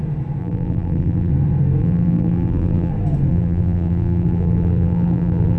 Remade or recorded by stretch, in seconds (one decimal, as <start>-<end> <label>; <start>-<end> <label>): 0.0-0.4 recorded; 0.4-1.3 remade; 1.3-1.8 recorded; 1.8-2.9 remade; 2.9-3.3 recorded; 3.3-5.6 remade

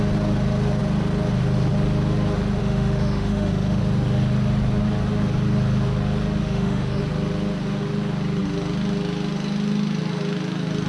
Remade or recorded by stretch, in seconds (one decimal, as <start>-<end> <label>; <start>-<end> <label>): 0.0-2.6 recorded; 2.6-3.8 remade; 3.8-6.4 recorded; 6.4-7.0 remade; 7.0-10.9 recorded

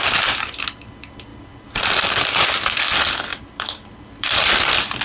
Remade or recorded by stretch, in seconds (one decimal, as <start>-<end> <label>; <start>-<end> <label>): 0.0-3.3 recorded; 3.3-4.6 remade; 4.6-5.0 recorded